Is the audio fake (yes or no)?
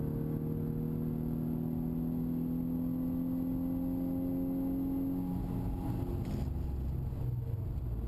no